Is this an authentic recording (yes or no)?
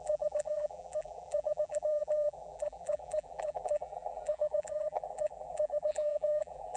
no